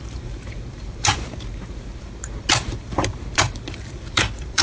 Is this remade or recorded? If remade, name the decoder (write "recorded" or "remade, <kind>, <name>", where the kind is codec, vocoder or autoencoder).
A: remade, vocoder, BigVGAN v2